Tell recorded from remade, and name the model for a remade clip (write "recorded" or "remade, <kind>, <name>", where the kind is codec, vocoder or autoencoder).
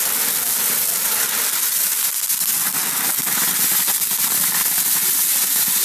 recorded